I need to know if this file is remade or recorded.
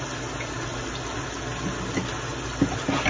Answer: recorded